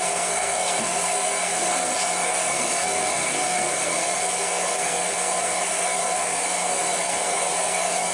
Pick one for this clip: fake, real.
fake